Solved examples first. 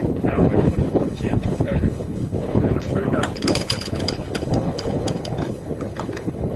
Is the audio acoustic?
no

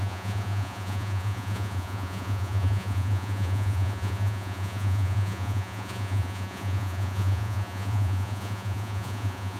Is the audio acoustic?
no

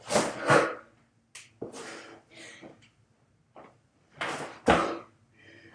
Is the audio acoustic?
yes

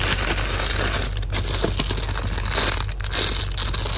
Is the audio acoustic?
yes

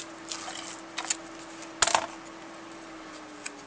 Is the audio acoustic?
yes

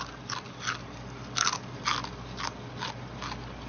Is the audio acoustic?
yes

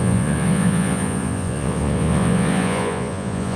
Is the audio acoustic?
no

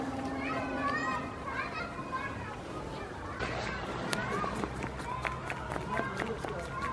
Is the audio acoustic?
yes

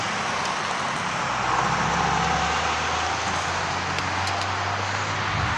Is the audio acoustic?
yes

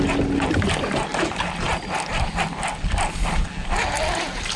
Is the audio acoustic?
yes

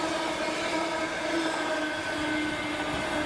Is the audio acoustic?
yes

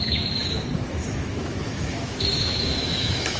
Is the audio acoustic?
no